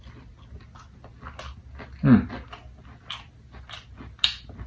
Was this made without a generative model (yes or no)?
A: yes